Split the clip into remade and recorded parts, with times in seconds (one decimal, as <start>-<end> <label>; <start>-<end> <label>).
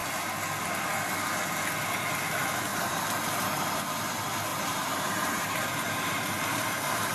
0.0-2.7 recorded; 2.7-3.8 remade; 3.8-4.5 recorded; 4.5-7.1 remade